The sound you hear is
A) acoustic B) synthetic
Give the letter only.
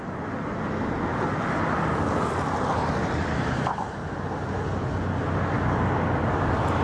A